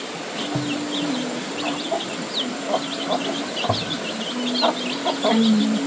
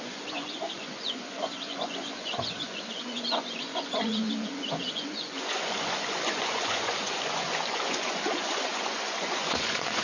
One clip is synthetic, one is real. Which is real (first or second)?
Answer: first